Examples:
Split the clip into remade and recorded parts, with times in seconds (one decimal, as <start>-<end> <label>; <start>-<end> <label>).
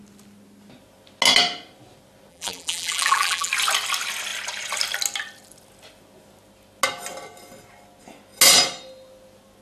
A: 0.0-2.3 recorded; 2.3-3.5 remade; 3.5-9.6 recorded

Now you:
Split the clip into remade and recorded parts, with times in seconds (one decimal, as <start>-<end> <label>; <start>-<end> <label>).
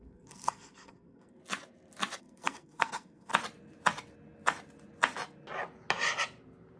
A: 0.0-1.4 remade; 1.4-2.2 recorded; 2.2-3.3 remade; 3.3-6.8 recorded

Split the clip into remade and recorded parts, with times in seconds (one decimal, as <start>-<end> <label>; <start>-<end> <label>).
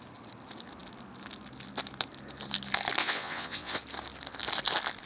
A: 0.0-3.0 recorded; 3.0-3.8 remade; 3.8-5.1 recorded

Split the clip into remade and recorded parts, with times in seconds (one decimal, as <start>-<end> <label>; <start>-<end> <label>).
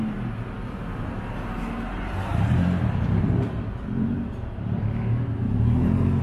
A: 0.0-0.6 recorded; 0.6-1.1 remade; 1.1-2.3 recorded; 2.3-4.8 remade; 4.8-6.2 recorded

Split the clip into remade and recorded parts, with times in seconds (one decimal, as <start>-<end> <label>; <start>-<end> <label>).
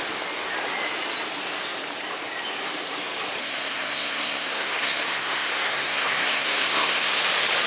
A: 0.0-3.4 recorded; 3.4-7.2 remade; 7.2-7.7 recorded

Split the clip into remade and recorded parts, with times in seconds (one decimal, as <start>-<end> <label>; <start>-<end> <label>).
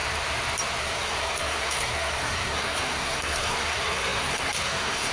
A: 0.0-0.8 recorded; 0.8-5.1 remade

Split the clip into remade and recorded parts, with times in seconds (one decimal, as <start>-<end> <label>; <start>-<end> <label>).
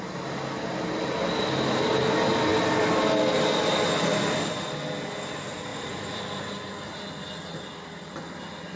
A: 0.0-5.7 recorded; 5.7-6.2 remade; 6.2-8.8 recorded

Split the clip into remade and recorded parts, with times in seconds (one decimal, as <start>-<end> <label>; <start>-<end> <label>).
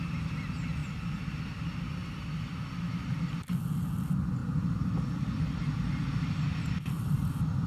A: 0.0-0.8 recorded; 0.8-1.6 remade; 1.6-7.7 recorded